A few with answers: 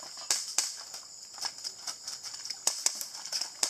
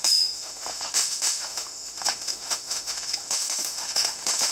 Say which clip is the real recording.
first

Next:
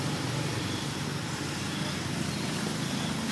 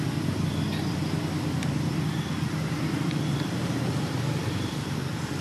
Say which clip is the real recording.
first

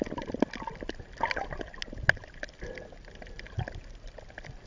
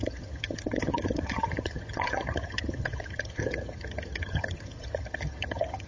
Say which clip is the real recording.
first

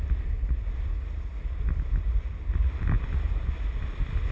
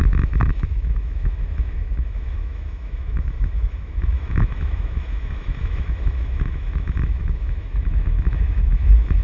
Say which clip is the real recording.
first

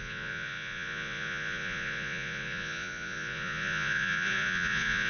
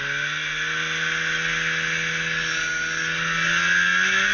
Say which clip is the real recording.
second